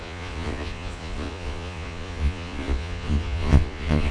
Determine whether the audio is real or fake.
fake